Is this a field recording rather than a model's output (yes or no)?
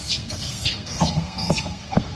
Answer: no